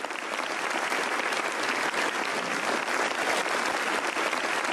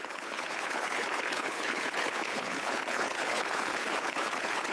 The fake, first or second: second